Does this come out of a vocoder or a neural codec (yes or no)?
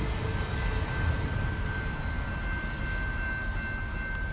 no